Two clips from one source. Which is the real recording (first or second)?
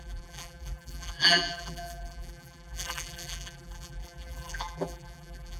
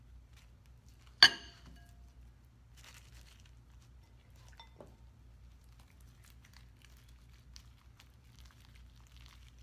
second